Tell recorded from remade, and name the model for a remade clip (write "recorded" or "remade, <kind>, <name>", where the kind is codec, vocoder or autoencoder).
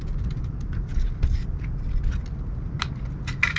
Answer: recorded